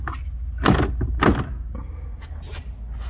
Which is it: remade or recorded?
recorded